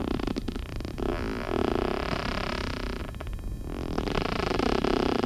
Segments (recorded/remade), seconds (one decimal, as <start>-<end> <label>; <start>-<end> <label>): 0.0-5.3 recorded